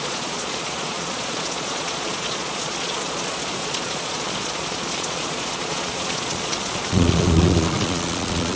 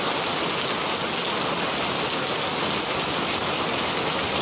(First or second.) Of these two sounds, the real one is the second